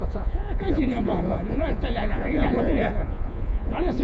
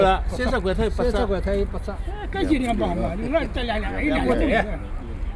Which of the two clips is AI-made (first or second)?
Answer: first